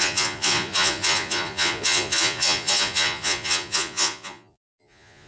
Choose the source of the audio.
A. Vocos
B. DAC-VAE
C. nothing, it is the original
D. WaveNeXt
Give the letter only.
A